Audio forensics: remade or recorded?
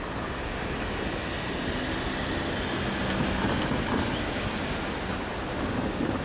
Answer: recorded